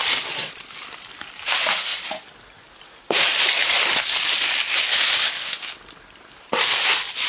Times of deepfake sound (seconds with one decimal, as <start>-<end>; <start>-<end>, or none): none